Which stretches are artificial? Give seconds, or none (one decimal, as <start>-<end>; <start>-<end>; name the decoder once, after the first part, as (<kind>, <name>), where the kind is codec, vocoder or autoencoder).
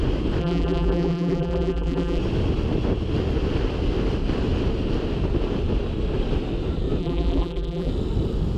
0.4-2.2 (vocoder, BigVGAN v2); 7.0-7.9